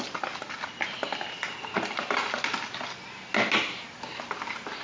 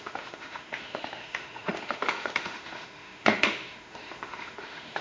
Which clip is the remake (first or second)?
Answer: second